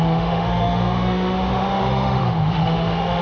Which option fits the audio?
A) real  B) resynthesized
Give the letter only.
B